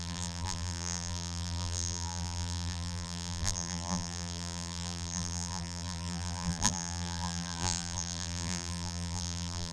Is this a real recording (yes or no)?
no